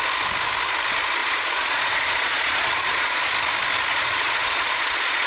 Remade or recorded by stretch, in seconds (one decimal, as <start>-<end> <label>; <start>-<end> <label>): 0.0-1.2 recorded; 1.2-3.3 remade; 3.3-3.9 recorded; 3.9-5.3 remade